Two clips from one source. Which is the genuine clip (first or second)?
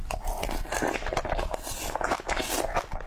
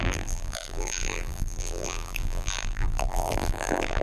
first